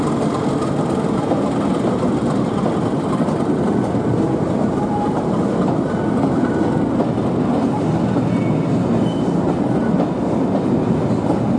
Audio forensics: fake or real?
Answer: real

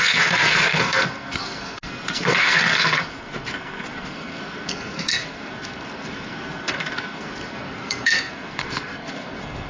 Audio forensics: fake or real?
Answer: fake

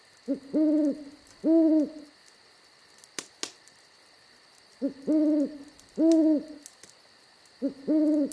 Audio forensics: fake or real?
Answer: real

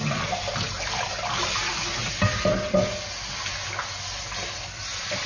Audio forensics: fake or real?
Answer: real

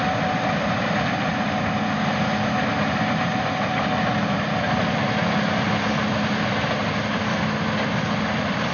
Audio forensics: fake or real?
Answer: real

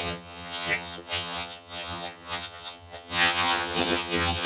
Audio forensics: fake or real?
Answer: fake